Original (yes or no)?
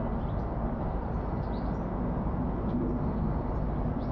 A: yes